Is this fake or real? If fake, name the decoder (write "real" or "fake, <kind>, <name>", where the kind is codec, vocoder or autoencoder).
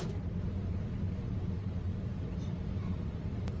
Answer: fake, vocoder, BigVGAN v2